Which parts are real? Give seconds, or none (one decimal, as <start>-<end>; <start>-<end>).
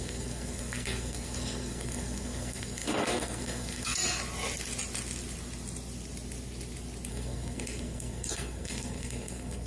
4.0-7.1